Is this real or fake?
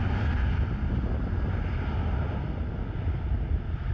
real